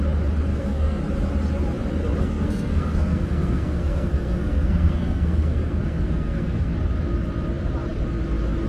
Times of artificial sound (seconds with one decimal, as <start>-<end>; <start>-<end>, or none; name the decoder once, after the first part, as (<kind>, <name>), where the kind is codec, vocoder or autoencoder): 0.5-1.0 (codec, SNAC); 2.2-6.7